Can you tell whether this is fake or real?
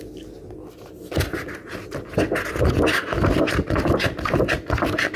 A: real